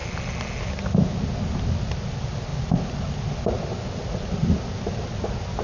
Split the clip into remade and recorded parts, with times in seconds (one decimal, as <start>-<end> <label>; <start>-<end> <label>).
0.0-5.6 recorded